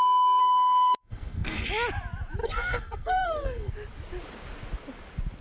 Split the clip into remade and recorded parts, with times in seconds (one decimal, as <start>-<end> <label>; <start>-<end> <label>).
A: 0.0-0.4 recorded; 0.4-1.7 remade; 1.7-2.4 recorded; 2.4-3.7 remade; 3.7-5.4 recorded